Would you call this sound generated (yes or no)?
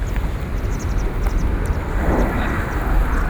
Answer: no